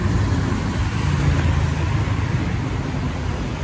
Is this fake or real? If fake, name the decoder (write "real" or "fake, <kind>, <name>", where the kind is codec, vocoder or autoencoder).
real